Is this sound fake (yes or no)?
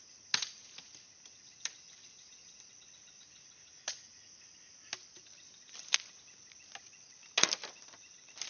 no